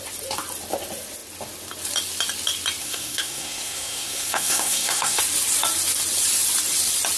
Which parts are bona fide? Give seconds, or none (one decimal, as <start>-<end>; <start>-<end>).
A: 0.0-2.8; 5.2-7.2